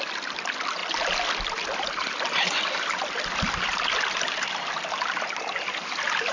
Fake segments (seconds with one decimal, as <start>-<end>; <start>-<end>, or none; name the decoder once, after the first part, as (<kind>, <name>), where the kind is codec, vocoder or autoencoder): none